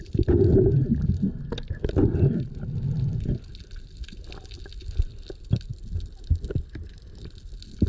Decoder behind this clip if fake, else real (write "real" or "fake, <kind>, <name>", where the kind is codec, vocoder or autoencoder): real